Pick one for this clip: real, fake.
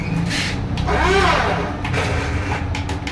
real